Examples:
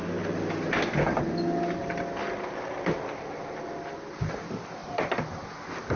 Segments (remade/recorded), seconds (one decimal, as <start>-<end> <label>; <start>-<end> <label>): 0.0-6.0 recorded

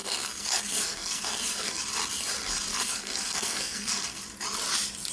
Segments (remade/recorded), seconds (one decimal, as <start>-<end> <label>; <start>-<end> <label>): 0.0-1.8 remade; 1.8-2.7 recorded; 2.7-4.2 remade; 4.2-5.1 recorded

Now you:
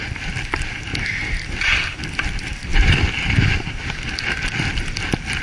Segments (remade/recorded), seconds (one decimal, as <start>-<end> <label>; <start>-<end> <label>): 0.0-5.4 recorded

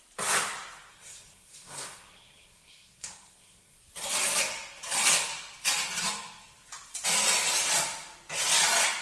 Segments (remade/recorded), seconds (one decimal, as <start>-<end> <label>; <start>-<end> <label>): 0.0-0.9 recorded; 0.9-3.8 remade; 3.8-9.0 recorded